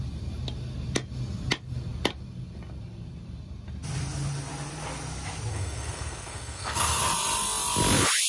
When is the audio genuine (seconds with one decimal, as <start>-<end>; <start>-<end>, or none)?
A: 0.0-5.5; 7.0-8.3